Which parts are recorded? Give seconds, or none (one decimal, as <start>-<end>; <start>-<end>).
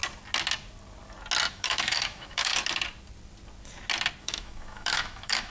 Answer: 0.0-1.5; 2.5-4.2